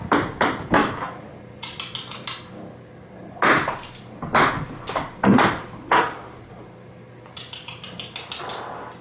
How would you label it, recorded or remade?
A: recorded